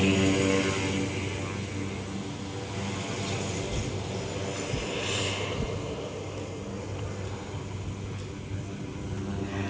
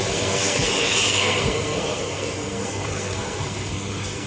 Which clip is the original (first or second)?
first